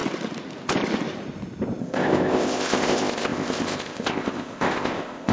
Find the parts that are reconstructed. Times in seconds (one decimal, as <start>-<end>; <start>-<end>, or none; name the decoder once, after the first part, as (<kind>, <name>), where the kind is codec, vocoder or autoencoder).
1.8-5.3 (codec, ZipCodec)